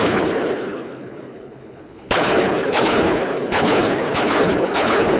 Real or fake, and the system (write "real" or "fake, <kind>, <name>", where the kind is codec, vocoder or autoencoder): fake, codec, HILCodec